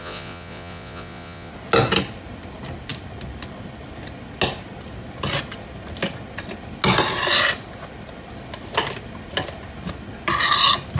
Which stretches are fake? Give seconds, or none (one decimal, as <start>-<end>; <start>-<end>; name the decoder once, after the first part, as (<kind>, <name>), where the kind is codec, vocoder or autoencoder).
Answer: 0.0-1.5 (vocoder, Vocos)